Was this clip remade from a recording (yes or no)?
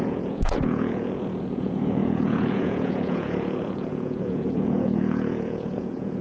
yes